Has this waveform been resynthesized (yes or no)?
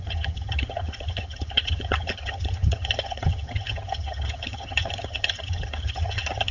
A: yes